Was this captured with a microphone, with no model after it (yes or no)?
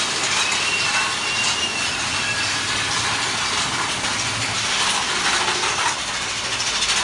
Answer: yes